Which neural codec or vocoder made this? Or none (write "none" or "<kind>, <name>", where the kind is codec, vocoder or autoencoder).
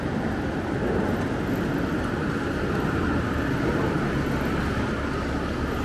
none